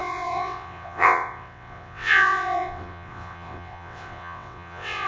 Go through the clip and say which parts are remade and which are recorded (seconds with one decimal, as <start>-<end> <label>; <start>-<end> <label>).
0.0-5.1 remade